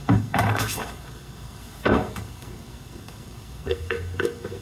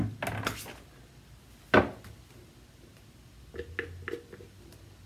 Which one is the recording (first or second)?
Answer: second